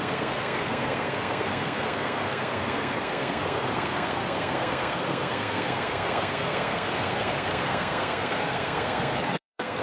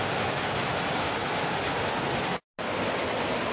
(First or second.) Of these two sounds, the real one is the second